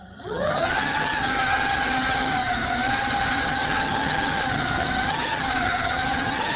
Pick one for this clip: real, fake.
fake